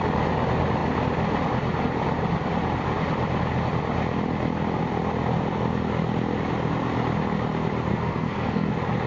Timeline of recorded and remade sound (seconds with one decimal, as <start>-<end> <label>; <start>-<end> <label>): 0.0-7.9 recorded; 7.9-8.7 remade; 8.7-9.1 recorded